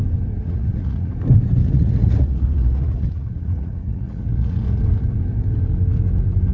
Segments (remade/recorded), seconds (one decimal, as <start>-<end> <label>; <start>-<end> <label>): 0.0-0.4 recorded; 0.4-1.1 remade; 1.1-1.6 recorded; 1.6-4.8 remade; 4.8-6.5 recorded